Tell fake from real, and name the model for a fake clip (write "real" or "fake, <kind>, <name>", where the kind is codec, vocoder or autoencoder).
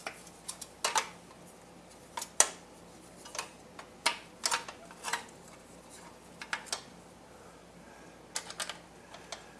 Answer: real